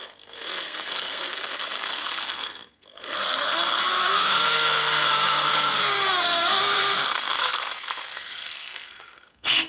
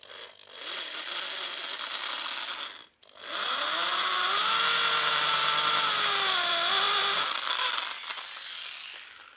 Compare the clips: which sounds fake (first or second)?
first